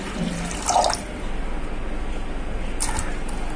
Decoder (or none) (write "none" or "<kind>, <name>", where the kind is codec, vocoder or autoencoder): none